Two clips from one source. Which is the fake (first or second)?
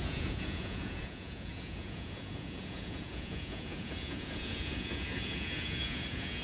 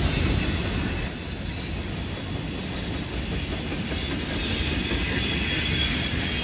first